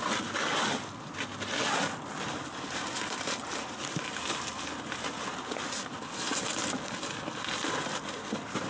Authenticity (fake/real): real